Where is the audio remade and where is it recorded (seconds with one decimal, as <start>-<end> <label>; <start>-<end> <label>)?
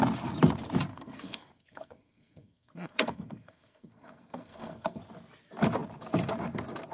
0.0-0.9 recorded; 0.9-5.0 remade; 5.0-6.9 recorded